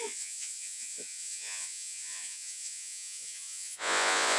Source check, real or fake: fake